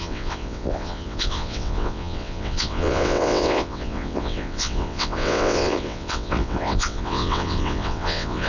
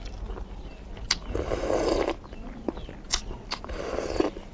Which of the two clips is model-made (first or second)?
first